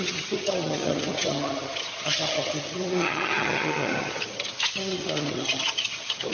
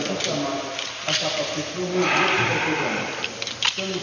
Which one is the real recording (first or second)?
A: second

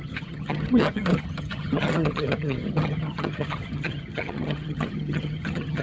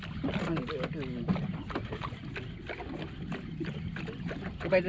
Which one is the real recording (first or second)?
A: second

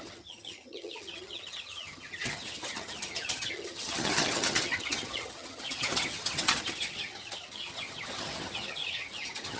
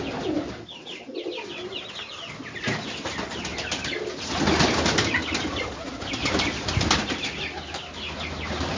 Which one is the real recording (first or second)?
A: second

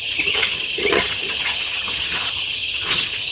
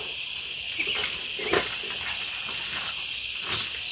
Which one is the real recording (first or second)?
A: second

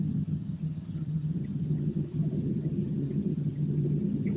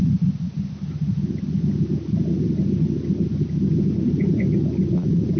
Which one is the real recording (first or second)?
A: second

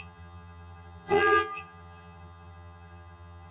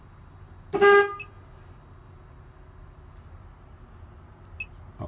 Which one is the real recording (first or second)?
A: second